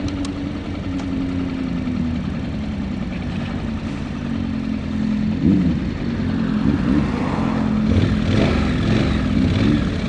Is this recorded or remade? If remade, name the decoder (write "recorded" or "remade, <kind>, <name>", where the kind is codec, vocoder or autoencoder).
recorded